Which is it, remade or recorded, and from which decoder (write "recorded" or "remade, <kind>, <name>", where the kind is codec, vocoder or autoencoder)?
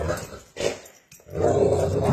recorded